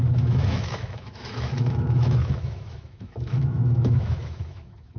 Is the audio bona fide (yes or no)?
no